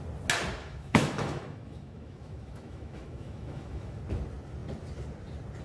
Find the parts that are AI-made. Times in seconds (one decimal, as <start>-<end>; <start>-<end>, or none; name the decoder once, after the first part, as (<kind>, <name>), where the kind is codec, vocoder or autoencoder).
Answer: 0.6-4.0 (autoencoder, DAC-VAE)